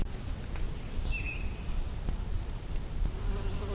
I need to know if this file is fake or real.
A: real